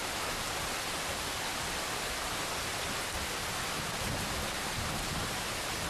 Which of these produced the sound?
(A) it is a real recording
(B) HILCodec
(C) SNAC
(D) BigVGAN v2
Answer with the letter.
A